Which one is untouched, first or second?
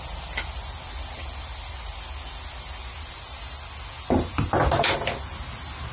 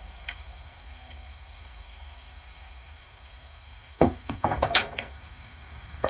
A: first